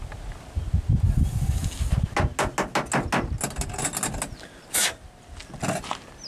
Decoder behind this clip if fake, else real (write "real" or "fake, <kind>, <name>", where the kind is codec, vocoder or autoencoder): real